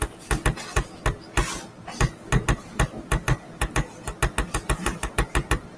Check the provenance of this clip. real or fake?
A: real